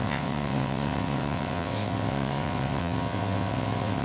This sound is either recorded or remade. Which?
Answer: remade